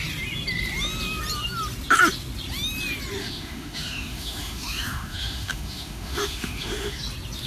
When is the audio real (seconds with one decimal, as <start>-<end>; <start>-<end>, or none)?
0.0-3.2; 7.0-7.5

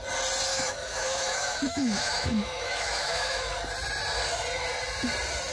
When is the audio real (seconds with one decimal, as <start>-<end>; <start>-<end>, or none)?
0.0-0.5; 3.4-5.5

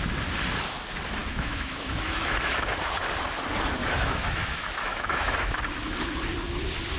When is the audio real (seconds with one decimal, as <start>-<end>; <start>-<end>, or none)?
0.0-1.2; 2.5-3.8; 5.6-7.0